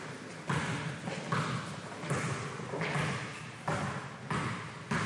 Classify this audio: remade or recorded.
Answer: recorded